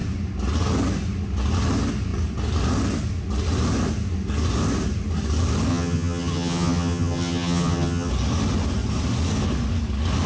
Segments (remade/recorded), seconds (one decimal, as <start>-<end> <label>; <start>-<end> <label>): 0.0-5.7 recorded; 5.7-8.1 remade; 8.1-10.3 recorded